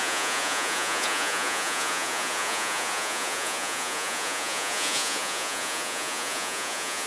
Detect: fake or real fake